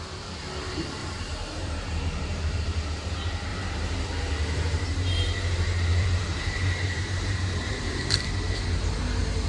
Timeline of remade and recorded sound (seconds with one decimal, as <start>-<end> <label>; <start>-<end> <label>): 0.0-1.0 recorded; 1.0-3.1 remade; 3.1-3.5 recorded; 3.5-8.3 remade; 8.3-9.5 recorded

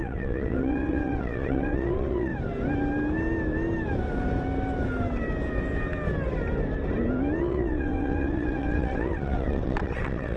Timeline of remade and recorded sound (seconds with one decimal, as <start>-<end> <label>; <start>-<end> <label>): 0.0-2.3 remade; 2.3-7.4 recorded; 7.4-10.4 remade